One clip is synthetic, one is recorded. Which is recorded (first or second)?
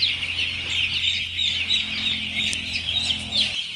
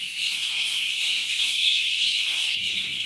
first